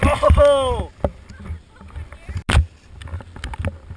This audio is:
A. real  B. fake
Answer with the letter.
A